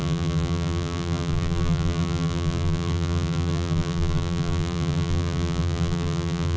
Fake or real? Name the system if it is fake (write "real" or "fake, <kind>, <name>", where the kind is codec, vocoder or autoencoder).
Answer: fake, vocoder, BigVGAN v2